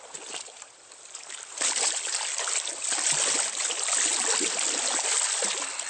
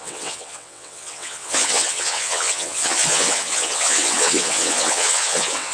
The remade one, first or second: second